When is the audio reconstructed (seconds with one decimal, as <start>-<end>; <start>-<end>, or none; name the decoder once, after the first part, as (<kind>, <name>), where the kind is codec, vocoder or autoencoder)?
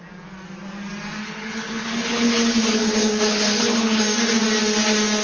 1.2-4.0 (codec, HILCodec)